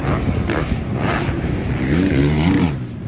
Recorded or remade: remade